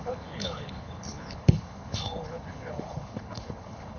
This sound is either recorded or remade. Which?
remade